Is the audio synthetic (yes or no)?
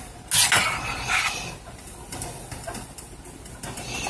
no